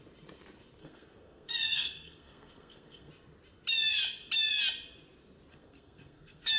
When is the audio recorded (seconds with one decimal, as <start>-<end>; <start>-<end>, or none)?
0.0-0.8; 3.1-5.5